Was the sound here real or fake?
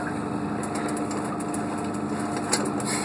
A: real